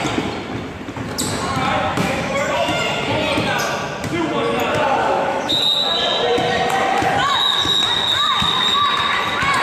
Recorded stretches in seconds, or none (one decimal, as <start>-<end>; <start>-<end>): 0.0-1.9; 2.5-5.0; 5.6-9.6